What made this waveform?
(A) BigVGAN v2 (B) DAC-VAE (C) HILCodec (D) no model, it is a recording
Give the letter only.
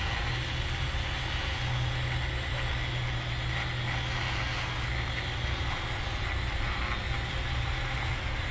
D